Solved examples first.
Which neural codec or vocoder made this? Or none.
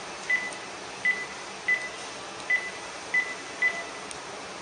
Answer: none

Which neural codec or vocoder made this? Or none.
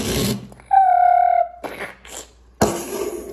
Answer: none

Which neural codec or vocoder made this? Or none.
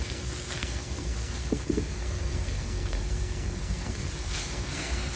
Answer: codec, SNAC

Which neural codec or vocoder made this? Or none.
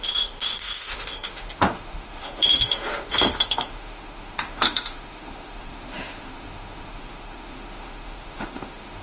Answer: autoencoder, DAC-VAE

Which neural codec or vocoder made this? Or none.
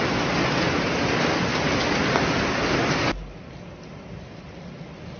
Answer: none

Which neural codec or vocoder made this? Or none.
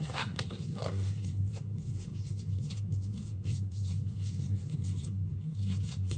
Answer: codec, SNAC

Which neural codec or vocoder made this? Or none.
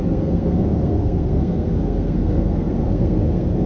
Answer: codec, SNAC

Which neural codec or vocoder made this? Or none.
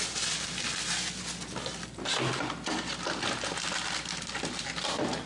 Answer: none